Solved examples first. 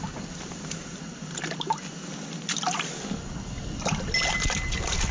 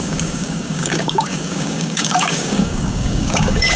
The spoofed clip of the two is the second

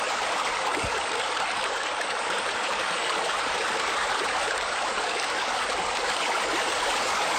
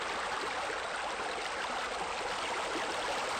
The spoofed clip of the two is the first